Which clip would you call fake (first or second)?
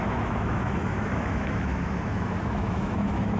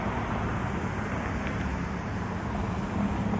first